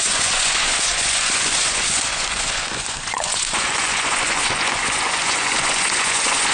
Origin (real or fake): fake